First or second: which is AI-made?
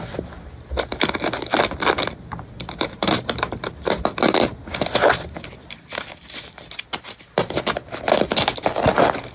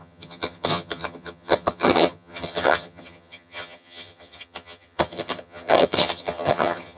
second